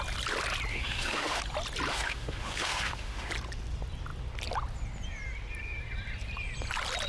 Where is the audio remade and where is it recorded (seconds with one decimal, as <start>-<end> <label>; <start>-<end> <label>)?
0.0-0.7 recorded; 0.7-1.4 remade; 1.4-1.9 recorded; 1.9-3.3 remade; 3.3-7.1 recorded